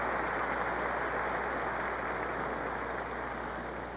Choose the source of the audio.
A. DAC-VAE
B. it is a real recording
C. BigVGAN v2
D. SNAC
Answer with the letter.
B